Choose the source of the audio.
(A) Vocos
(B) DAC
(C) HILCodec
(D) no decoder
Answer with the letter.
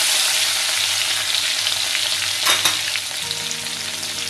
D